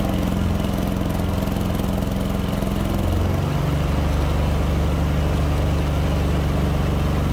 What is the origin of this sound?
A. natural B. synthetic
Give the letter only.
A